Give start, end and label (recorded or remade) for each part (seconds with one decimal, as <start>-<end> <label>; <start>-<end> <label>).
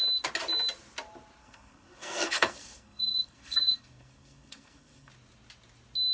0.0-1.4 recorded; 1.4-5.1 remade; 5.1-6.1 recorded